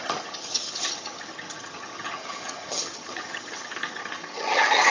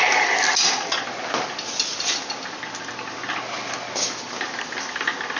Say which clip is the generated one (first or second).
first